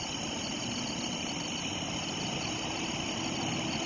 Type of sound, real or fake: real